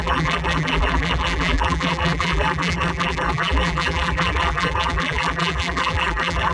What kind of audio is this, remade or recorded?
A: remade